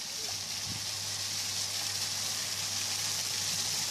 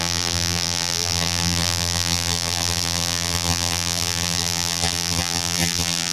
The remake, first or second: second